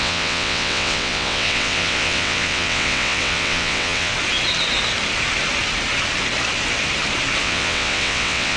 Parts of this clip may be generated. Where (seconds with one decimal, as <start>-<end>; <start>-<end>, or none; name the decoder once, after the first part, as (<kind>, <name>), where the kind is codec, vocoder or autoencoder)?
0.0-4.1 (vocoder, WaveNeXt); 7.4-8.6